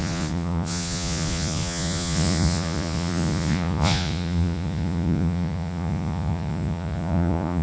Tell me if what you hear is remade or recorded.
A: remade